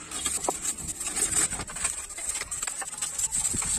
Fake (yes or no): no